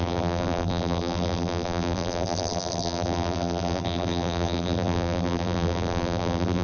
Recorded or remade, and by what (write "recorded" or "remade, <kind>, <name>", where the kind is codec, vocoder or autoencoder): remade, vocoder, BigVGAN v2